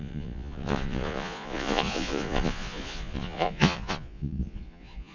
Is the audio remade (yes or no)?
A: yes